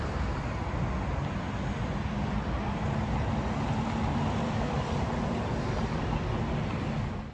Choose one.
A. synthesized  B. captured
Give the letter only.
B